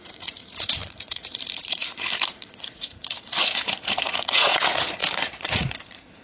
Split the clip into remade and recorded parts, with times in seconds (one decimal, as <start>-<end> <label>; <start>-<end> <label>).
0.0-6.2 remade